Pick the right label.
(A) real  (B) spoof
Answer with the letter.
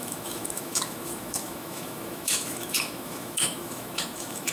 B